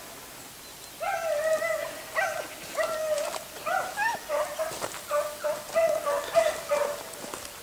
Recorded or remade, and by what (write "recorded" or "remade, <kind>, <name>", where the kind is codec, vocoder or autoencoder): recorded